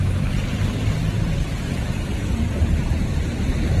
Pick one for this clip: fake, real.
real